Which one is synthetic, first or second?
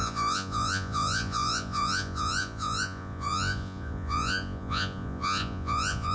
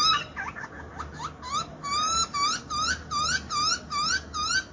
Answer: first